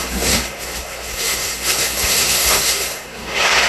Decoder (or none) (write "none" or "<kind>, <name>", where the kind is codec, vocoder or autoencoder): codec, SNAC